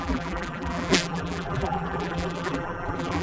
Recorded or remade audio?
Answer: remade